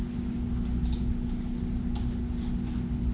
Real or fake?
real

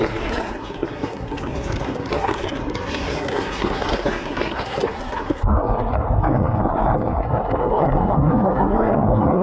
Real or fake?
fake